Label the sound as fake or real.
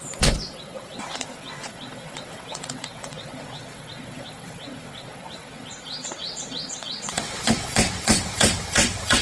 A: fake